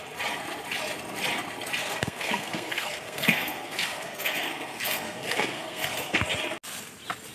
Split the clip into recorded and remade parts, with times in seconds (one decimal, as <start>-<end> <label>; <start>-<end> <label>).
0.0-1.8 recorded; 1.8-6.2 remade; 6.2-7.3 recorded